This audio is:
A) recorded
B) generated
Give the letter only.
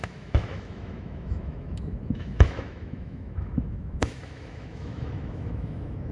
B